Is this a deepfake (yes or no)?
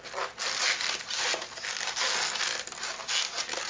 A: no